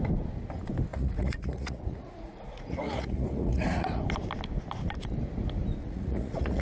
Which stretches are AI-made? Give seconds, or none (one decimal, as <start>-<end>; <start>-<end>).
0.9-4.0; 5.8-6.6